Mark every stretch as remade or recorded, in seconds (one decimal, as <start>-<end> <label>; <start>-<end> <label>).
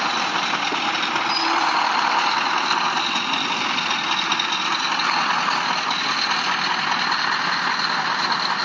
0.0-8.6 recorded